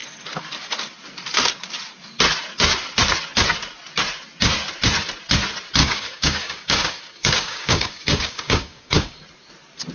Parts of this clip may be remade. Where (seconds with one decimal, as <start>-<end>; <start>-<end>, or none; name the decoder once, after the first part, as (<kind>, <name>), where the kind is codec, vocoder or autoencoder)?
5.8-9.2 (codec, DAC)